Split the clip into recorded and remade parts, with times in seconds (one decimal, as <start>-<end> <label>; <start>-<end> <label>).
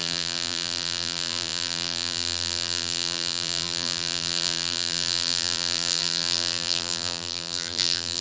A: 0.0-8.2 remade